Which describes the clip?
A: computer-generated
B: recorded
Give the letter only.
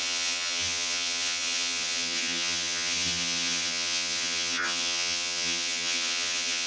A